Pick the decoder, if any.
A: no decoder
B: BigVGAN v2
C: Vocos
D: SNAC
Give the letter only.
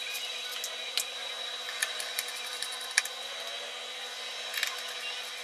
A